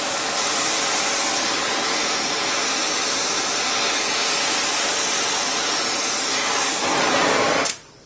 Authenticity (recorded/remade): recorded